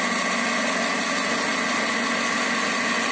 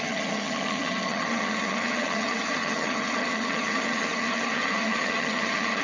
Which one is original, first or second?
first